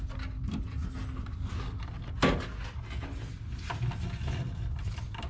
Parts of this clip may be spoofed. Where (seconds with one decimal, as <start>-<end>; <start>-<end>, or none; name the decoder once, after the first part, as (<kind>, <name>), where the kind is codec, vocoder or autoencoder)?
none